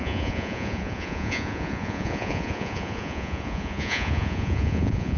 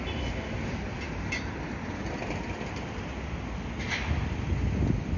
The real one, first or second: second